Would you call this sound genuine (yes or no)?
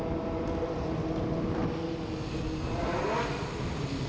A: yes